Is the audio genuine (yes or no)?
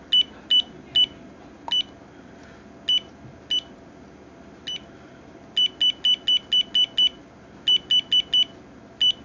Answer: yes